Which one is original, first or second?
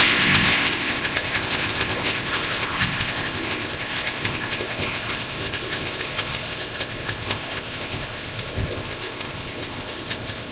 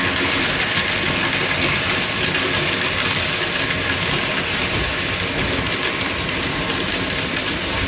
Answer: second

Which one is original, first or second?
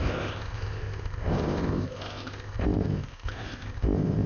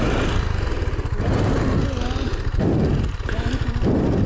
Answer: second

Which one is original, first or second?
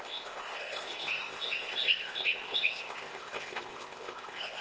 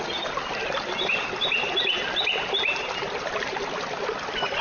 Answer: second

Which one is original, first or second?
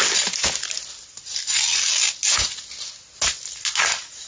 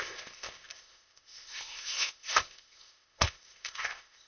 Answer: first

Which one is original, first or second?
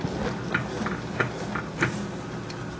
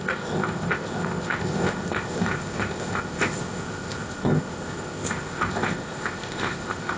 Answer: first